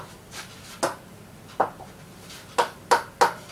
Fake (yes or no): no